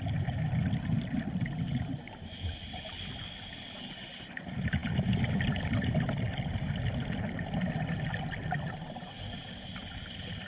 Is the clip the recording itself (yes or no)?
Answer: yes